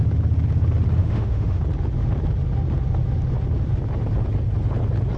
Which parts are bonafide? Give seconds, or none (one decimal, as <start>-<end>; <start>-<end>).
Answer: 0.0-1.0; 1.6-5.2